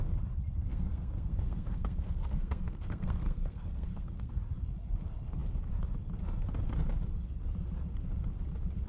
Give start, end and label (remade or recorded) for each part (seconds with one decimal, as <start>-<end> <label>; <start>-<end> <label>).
0.0-0.7 recorded; 0.7-4.4 remade; 4.4-8.9 recorded